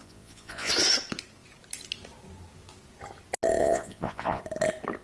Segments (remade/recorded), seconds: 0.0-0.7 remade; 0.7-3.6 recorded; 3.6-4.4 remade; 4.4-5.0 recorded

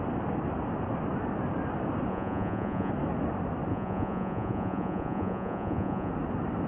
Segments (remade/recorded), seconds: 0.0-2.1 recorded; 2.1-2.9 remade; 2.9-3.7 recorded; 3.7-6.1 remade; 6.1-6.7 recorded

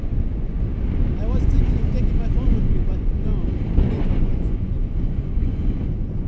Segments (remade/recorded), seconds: 0.0-0.7 remade; 0.7-2.6 recorded; 2.6-3.3 remade; 3.3-3.8 recorded; 3.8-6.3 remade

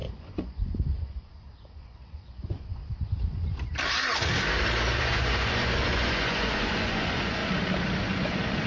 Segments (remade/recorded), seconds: 0.0-2.8 remade; 2.8-4.9 recorded; 4.9-7.4 remade; 7.4-8.0 recorded; 8.0-8.7 remade

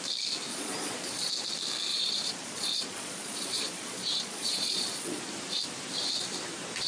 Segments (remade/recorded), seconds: 0.0-0.5 recorded; 0.5-1.3 remade; 1.3-1.9 recorded; 1.9-5.2 remade; 5.2-6.9 recorded